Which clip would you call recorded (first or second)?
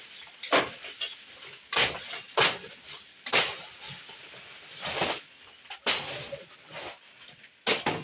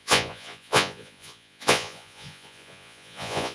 first